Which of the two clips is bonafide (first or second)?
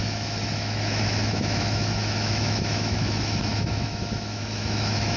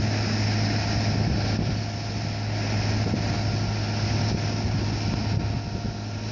second